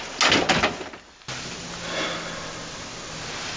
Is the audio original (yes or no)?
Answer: yes